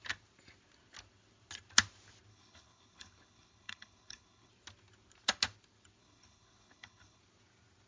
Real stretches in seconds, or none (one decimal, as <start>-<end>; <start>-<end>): 0.0-2.3; 4.5-6.0; 7.2-7.9